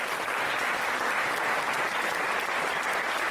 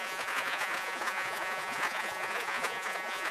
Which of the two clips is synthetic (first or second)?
second